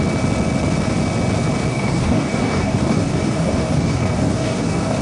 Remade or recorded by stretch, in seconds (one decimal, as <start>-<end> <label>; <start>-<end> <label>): 0.0-1.7 recorded; 1.7-5.0 remade